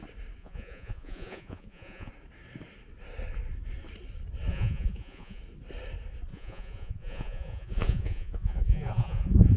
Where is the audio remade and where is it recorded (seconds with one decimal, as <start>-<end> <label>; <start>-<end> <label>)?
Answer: 0.0-0.4 recorded; 0.4-2.1 remade; 2.1-4.5 recorded; 4.5-5.4 remade; 5.4-6.3 recorded; 6.3-9.6 remade